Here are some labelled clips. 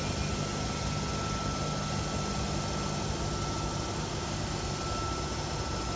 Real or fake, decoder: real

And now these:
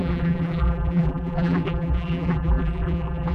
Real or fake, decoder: fake, vocoder, BigVGAN v2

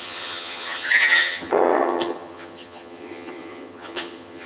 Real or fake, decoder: fake, vocoder, HiFi-GAN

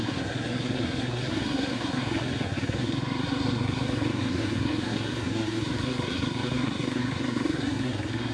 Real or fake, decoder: fake, codec, SNAC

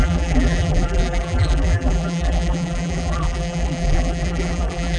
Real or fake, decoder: fake, vocoder, BigVGAN v2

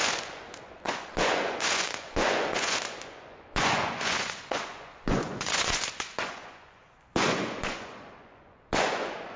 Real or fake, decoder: fake, vocoder, Vocos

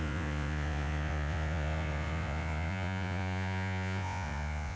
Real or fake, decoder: fake, vocoder, Vocos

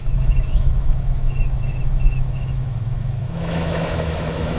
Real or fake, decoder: fake, autoencoder, DAC-VAE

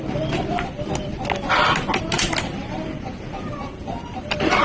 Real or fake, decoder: real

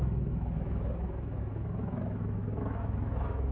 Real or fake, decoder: fake, autoencoder, DAC-VAE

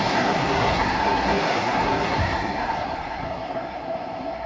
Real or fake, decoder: fake, codec, SNAC